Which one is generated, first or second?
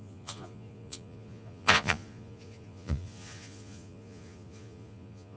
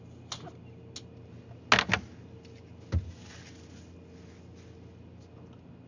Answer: first